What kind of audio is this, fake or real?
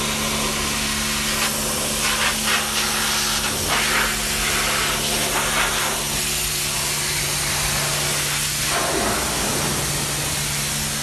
real